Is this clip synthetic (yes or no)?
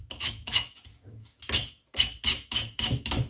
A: yes